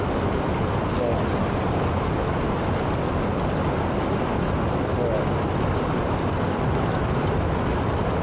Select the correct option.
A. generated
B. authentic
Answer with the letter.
B